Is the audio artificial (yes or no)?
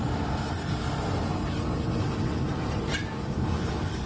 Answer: no